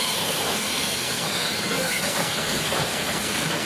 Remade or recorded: remade